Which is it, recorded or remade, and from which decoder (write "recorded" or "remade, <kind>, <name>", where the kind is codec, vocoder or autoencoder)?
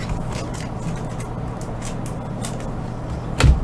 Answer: recorded